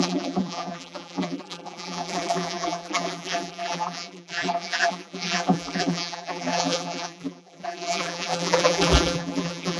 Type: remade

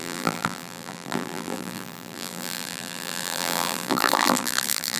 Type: remade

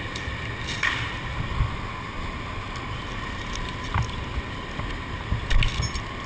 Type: recorded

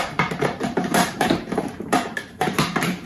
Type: remade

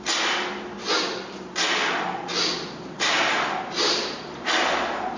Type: recorded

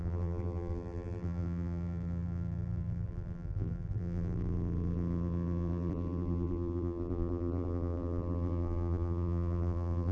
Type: remade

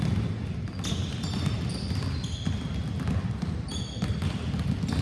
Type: recorded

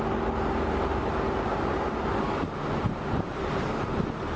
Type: recorded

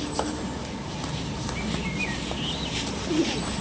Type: recorded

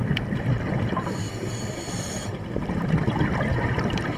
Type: remade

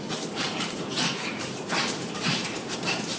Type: remade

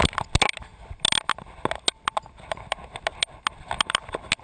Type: recorded